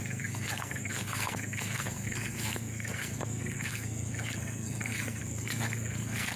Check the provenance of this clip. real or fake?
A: fake